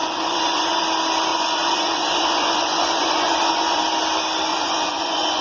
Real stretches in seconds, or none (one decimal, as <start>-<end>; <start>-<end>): 0.8-1.3; 3.8-4.5